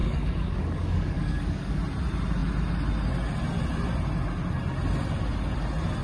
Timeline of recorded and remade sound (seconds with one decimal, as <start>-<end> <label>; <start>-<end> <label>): 0.0-1.8 remade; 1.8-6.0 recorded